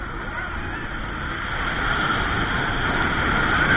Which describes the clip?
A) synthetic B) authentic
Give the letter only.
B